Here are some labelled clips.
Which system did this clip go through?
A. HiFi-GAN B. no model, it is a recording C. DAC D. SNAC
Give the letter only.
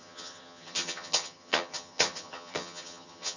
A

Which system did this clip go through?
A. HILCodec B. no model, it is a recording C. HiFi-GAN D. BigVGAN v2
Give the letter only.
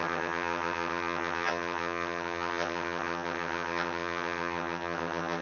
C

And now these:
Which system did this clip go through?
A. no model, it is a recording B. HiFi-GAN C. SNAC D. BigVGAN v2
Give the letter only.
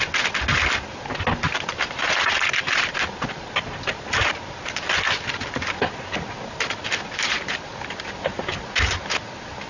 A